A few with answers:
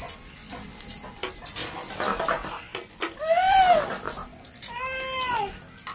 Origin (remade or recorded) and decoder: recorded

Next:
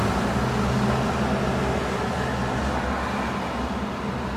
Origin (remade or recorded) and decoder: recorded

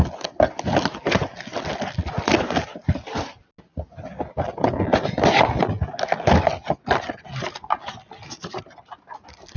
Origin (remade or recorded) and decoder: recorded